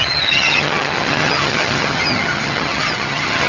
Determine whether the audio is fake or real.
fake